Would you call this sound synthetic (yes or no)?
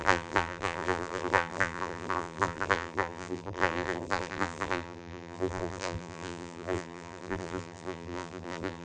yes